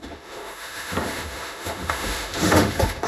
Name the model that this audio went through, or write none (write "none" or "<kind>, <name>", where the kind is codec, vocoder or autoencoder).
autoencoder, DAC-VAE